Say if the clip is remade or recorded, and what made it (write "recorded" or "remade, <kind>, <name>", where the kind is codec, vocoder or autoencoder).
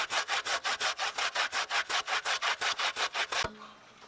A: recorded